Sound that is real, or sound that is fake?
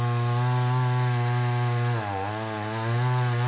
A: real